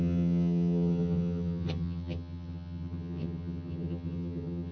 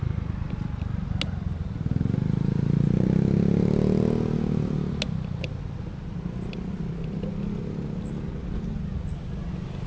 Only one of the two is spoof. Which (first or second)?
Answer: first